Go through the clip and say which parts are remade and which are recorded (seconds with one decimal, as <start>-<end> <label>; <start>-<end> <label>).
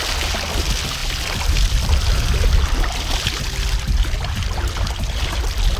0.0-5.8 recorded